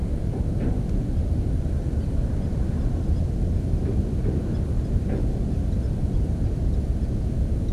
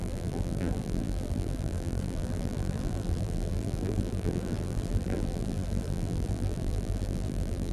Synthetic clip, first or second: second